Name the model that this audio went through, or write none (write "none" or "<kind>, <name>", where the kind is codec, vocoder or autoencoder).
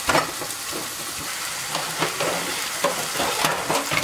none